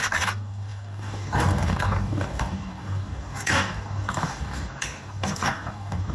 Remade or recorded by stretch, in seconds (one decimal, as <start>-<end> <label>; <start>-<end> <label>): 0.0-6.1 remade